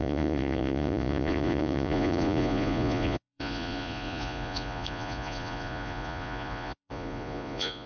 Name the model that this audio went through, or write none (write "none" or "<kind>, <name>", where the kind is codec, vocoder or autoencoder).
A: vocoder, Vocos